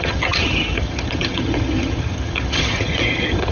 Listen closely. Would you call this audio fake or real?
fake